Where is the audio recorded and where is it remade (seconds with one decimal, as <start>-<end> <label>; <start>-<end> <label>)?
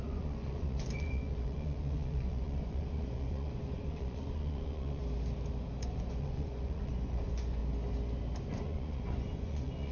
0.0-5.0 remade; 5.0-5.8 recorded; 5.8-7.6 remade; 7.6-8.5 recorded; 8.5-9.9 remade